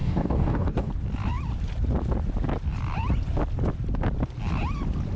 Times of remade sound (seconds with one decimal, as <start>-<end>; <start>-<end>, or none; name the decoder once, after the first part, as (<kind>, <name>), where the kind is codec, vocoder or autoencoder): 0.0-0.9 (codec, DAC)

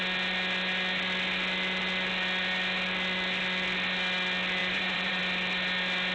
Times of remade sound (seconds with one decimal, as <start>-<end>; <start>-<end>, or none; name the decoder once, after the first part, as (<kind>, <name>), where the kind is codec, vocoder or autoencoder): 4.6-5.2 (vocoder, Vocos)

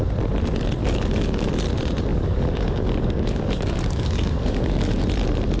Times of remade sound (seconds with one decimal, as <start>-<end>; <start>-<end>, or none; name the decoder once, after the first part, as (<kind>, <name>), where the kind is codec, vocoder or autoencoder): 0.8-1.5 (codec, DAC); 2.1-5.0